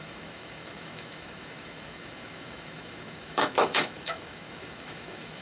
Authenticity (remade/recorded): remade